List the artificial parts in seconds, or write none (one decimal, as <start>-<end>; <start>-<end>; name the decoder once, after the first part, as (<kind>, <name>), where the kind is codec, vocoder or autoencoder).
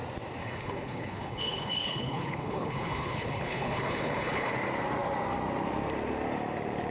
0.4-4.5 (codec, HILCodec)